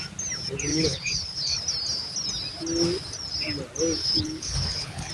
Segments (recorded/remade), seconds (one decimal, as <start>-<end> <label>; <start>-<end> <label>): 0.0-0.7 recorded; 0.7-1.6 remade; 1.6-4.0 recorded; 4.0-5.1 remade